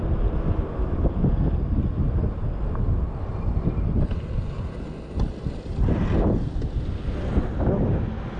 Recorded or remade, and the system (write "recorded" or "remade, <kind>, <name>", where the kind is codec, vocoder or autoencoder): recorded